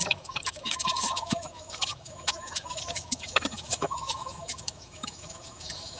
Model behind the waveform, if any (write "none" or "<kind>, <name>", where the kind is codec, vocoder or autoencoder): autoencoder, DAC-VAE